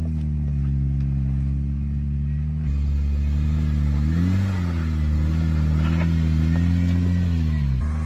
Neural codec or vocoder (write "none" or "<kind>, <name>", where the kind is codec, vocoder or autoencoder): none